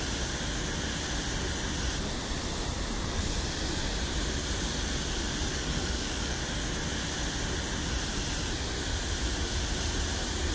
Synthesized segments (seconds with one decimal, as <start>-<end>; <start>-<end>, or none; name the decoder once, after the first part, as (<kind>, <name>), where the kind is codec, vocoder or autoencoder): 5.5-6.4 (codec, DAC)